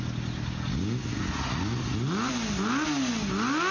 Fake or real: real